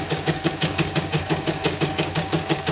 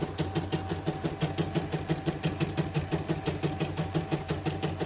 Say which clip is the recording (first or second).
second